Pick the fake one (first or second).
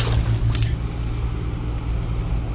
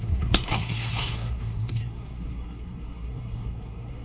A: second